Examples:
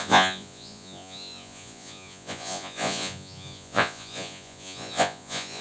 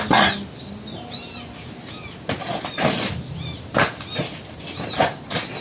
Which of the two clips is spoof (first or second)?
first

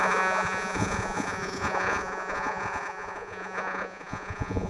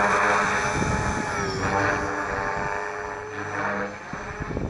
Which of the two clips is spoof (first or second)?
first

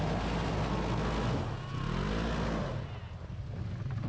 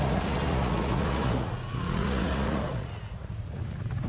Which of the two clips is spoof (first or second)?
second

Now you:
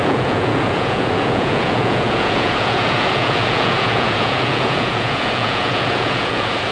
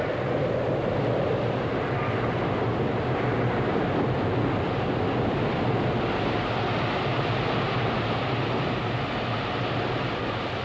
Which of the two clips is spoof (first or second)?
first